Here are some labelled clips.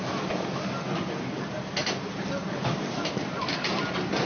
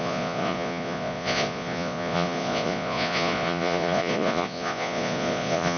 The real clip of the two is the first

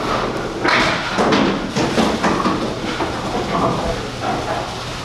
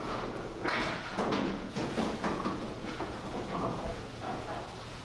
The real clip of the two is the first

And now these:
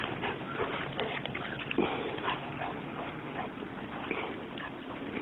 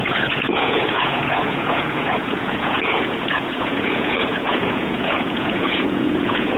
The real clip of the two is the first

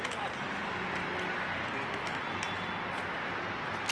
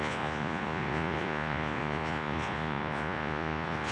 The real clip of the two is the first